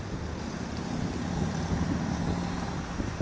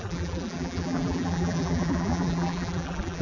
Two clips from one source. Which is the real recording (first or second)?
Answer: first